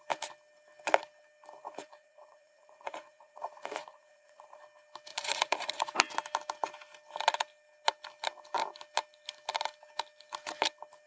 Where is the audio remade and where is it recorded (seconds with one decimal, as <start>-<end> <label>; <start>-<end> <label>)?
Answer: 0.0-1.6 recorded; 1.6-4.6 remade; 4.6-5.1 recorded; 5.1-5.8 remade; 5.8-11.1 recorded